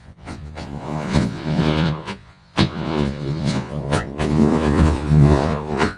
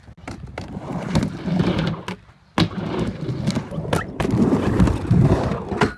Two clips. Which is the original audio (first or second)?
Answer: second